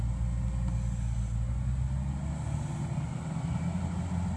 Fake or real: real